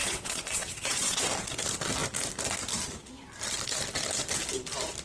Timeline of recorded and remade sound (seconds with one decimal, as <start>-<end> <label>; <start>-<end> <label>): 0.0-1.2 remade; 1.2-5.0 recorded